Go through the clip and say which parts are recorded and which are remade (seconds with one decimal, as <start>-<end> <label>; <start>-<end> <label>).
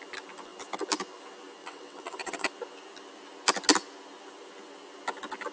0.0-1.6 recorded; 1.6-2.5 remade; 2.5-5.5 recorded